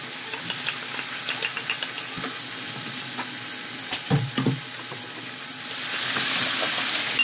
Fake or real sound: real